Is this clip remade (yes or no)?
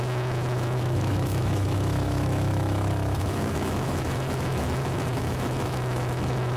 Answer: yes